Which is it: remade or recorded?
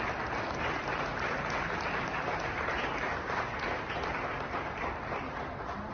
recorded